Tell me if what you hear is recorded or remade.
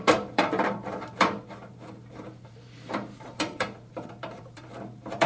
remade